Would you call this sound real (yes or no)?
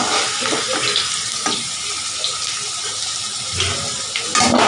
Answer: yes